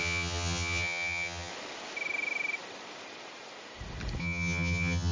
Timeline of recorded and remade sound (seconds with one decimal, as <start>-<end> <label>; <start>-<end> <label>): 0.0-1.5 remade; 1.5-4.2 recorded; 4.2-5.1 remade